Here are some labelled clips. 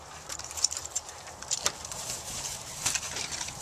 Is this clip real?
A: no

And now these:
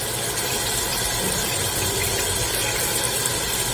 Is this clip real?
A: yes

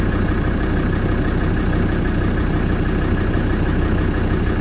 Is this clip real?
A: yes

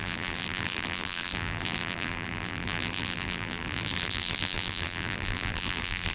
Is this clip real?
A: no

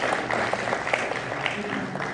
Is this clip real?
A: yes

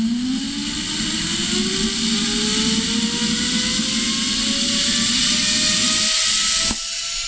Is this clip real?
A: yes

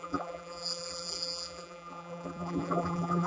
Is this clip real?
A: no